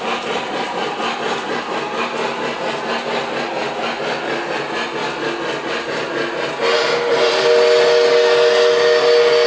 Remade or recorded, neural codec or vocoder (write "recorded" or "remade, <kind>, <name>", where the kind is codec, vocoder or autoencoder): recorded